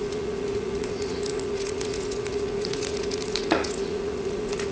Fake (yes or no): yes